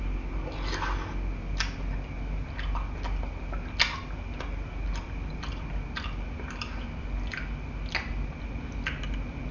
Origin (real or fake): real